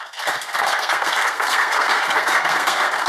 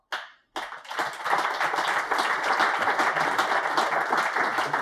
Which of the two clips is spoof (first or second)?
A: first